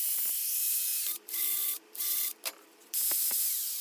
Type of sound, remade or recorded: remade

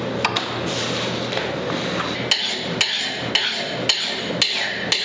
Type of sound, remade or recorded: recorded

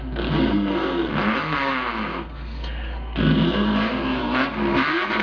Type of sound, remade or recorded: remade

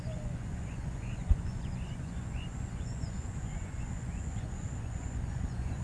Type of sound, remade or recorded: remade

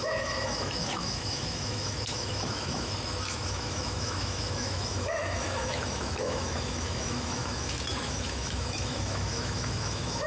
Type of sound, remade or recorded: remade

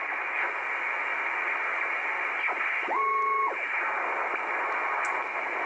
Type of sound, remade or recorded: recorded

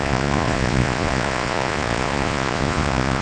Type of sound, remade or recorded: remade